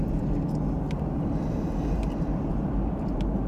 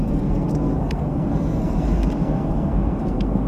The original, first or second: first